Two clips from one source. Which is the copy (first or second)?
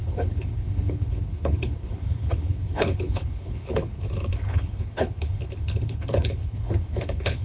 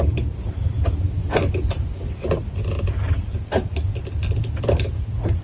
first